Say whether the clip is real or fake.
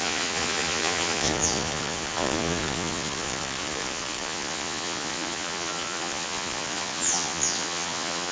fake